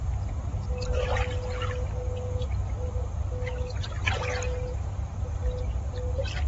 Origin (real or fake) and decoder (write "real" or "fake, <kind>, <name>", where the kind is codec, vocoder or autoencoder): real